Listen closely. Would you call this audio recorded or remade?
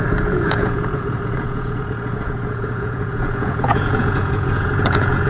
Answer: remade